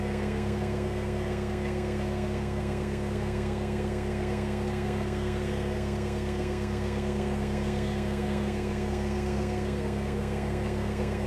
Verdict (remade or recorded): remade